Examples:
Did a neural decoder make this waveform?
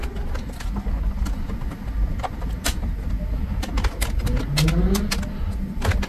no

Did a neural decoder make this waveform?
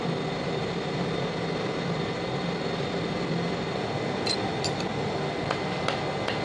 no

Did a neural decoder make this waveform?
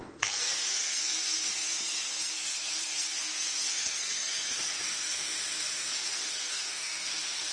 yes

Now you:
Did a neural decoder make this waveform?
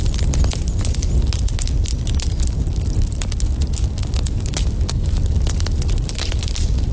no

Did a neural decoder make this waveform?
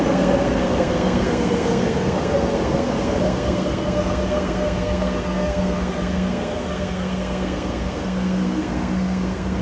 yes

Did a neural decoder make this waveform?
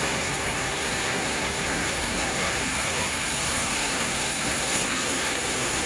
yes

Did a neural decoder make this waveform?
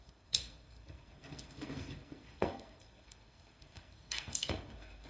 yes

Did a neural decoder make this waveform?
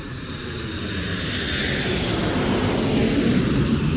no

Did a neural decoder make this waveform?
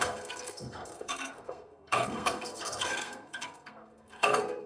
yes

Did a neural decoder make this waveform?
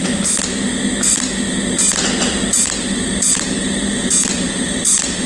no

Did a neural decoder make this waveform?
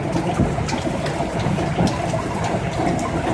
no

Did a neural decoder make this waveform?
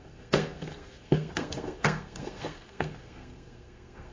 yes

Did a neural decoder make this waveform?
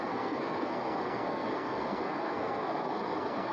yes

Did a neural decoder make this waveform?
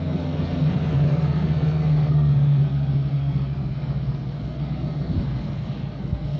yes